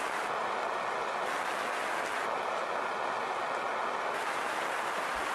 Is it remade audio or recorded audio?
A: recorded